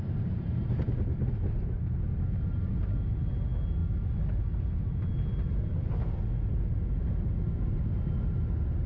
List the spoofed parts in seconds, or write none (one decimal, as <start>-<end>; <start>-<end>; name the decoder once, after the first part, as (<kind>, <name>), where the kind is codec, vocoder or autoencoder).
none